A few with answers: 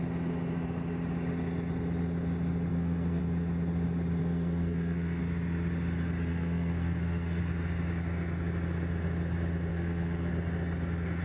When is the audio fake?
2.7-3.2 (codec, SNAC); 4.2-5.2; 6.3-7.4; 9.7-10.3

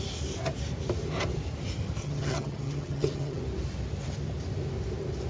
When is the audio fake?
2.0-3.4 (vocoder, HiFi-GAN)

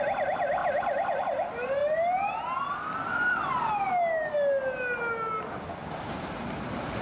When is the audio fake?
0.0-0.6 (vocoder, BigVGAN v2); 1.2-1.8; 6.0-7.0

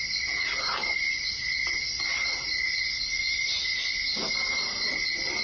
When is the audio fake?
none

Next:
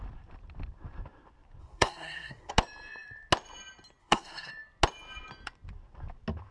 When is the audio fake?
1.6-2.5 (codec, SNAC); 4.0-4.5

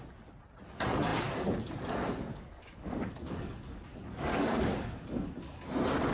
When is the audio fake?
2.3-5.6 (codec, DAC)

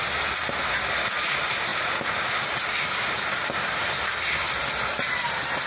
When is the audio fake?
none